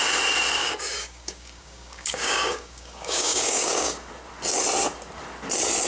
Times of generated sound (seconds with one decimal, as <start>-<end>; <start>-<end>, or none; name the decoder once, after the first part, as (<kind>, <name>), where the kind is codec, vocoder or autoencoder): 0.6-4.1 (codec, DAC)